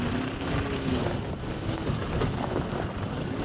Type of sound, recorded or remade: recorded